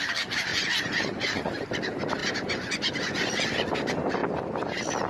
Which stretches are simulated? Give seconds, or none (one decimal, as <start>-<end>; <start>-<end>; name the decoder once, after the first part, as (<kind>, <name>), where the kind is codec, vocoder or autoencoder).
0.5-1.5 (vocoder, Vocos); 2.2-3.3